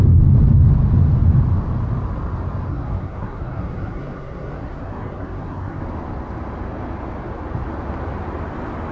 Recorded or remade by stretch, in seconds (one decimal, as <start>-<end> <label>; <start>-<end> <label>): 0.0-2.7 recorded; 2.7-5.8 remade; 5.8-8.9 recorded